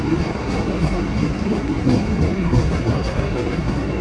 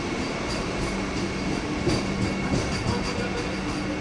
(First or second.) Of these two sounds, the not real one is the first